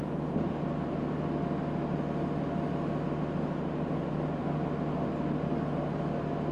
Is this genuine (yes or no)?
yes